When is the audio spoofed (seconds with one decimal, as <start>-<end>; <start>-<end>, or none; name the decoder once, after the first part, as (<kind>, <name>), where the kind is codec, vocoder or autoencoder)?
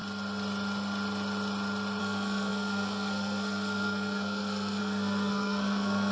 2.0-6.1 (codec, SNAC)